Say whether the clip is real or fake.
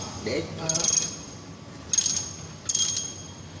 real